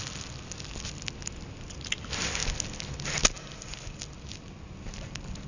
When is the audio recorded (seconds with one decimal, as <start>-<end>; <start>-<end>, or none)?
0.0-5.5